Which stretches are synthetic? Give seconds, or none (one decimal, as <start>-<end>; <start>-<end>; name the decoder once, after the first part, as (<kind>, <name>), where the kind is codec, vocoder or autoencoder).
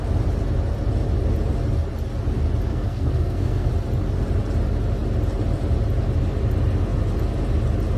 2.7-3.7 (codec, SNAC)